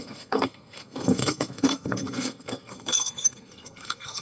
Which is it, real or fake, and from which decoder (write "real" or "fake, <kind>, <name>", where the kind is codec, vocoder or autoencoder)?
fake, codec, SNAC